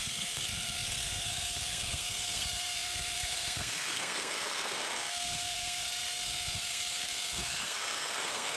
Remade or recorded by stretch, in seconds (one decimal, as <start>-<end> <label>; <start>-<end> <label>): 0.0-8.6 remade